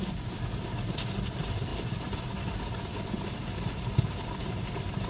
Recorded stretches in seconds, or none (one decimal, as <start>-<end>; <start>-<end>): 0.0-1.7